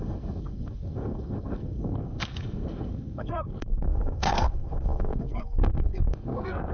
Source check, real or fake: fake